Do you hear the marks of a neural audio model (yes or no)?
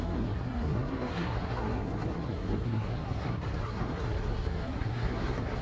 yes